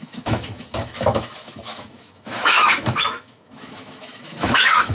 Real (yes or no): no